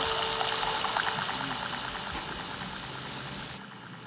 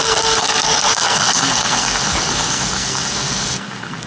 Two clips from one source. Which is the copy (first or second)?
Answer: second